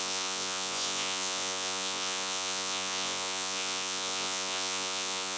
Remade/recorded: remade